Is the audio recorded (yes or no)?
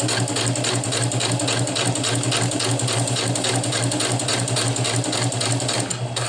yes